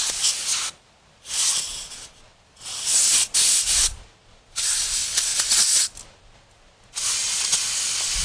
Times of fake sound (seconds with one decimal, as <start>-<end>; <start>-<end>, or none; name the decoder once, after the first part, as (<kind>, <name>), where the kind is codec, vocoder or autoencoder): none